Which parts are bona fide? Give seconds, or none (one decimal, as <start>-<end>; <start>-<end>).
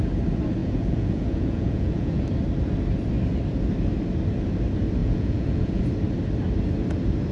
0.0-0.6; 2.2-5.0; 5.8-7.3